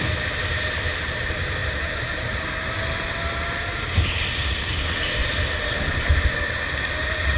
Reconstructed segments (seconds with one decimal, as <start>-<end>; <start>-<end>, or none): none